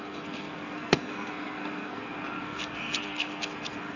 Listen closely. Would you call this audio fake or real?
fake